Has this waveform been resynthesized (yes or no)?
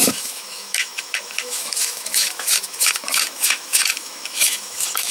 yes